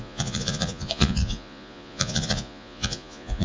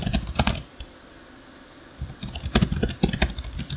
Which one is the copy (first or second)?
first